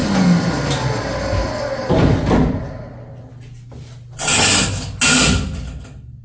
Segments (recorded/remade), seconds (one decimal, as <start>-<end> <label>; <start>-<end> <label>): 0.0-6.2 recorded